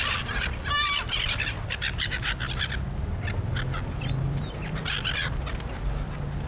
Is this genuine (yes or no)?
yes